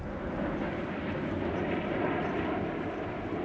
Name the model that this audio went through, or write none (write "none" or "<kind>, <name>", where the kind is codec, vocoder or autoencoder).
none